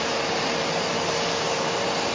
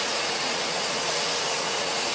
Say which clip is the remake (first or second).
second